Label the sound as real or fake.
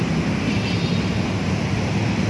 real